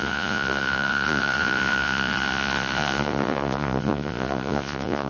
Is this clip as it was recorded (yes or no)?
no